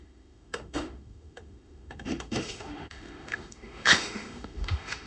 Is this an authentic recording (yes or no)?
no